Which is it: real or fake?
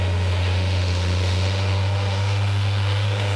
fake